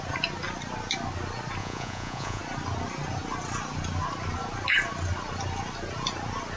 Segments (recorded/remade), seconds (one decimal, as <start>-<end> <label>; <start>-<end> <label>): 0.0-1.6 recorded; 1.6-2.4 remade; 2.4-6.6 recorded